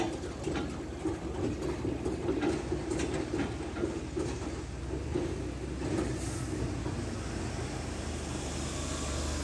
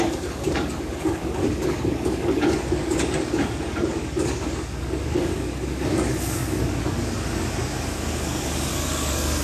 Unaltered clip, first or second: first